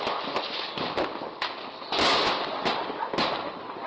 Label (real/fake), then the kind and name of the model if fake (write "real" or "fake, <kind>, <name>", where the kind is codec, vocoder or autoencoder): real